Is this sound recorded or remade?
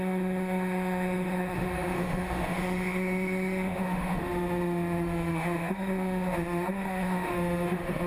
remade